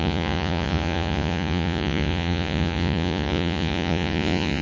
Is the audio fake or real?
fake